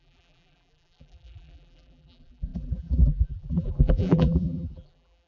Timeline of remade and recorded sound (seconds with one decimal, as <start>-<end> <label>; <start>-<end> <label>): 0.0-5.3 remade